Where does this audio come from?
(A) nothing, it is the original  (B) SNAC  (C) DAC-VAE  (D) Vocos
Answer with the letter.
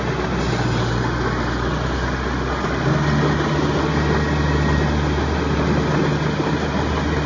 A